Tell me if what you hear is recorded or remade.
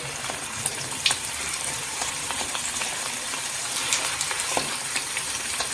remade